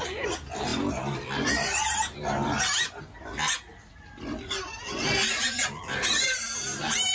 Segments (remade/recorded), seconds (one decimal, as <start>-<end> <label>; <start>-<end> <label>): 0.0-3.7 recorded; 3.7-4.7 remade; 4.7-7.1 recorded